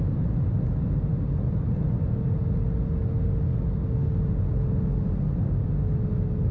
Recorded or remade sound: recorded